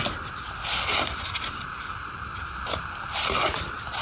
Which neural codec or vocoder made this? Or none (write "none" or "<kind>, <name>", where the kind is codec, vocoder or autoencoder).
none